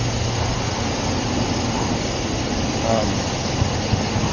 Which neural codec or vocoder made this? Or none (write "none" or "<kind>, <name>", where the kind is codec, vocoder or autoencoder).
none